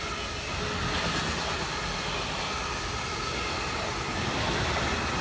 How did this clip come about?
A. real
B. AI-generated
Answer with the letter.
A